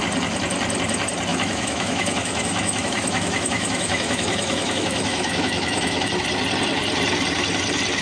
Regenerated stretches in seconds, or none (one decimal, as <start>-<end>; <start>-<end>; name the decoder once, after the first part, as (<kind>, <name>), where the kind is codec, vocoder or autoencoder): 1.3-6.1 (autoencoder, DAC-VAE)